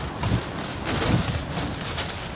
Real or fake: real